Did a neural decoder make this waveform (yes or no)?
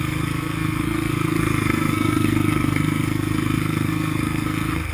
yes